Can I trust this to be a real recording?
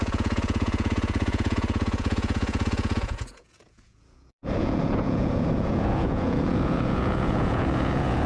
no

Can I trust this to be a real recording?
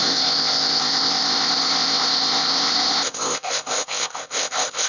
no